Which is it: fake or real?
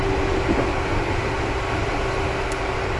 real